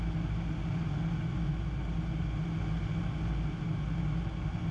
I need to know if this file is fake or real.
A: real